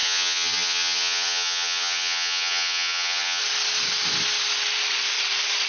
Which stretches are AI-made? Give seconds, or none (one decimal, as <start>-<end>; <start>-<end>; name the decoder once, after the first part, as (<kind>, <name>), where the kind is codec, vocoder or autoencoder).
0.0-3.4 (vocoder, HiFi-GAN)